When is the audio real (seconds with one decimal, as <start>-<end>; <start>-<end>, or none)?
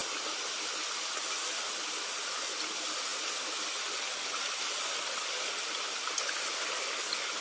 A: 0.0-7.4